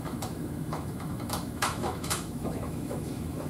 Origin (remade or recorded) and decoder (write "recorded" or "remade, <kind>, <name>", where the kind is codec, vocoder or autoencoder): remade, autoencoder, DAC-VAE